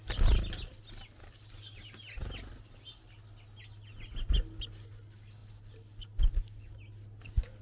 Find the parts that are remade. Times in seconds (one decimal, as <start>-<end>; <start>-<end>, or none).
none